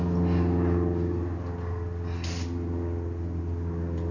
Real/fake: real